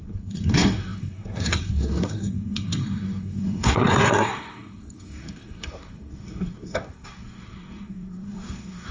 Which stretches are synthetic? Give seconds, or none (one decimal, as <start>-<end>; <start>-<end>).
0.0-8.9